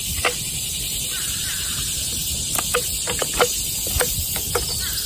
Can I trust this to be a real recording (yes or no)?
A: yes